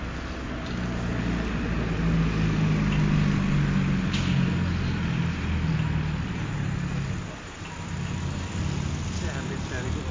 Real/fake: real